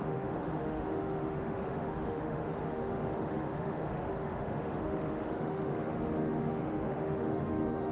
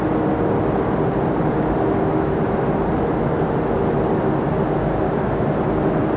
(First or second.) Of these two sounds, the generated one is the first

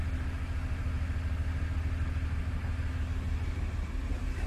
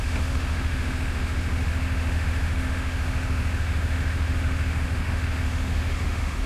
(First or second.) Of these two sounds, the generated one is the second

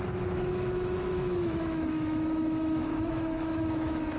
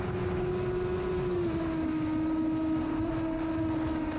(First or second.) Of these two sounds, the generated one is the first